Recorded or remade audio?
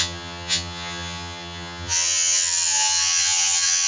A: remade